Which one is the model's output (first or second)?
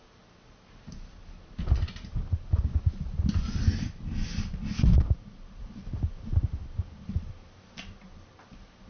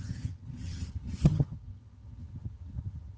second